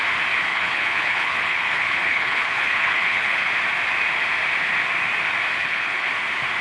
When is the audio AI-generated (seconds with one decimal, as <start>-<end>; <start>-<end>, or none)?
0.5-3.5; 5.6-6.1